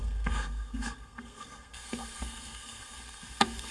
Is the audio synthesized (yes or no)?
yes